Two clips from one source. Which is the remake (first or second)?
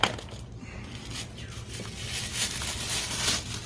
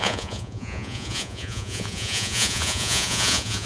second